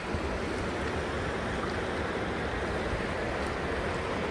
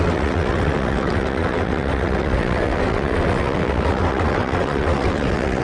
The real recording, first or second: first